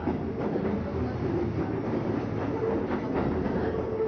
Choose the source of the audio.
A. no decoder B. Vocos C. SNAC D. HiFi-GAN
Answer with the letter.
A